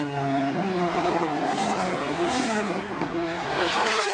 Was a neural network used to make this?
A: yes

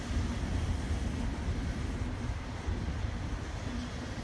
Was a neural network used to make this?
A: no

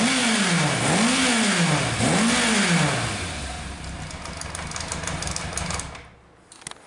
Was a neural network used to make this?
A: no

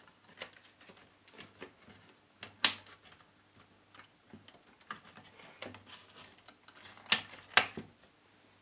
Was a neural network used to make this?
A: no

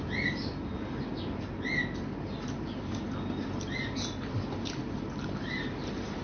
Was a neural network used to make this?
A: no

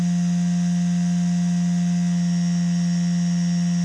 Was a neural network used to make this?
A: no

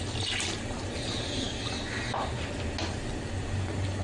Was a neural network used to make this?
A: no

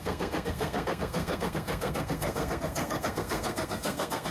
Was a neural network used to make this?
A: yes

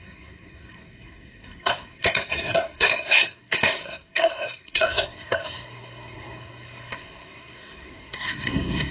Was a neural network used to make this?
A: yes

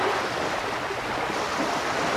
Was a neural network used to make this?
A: no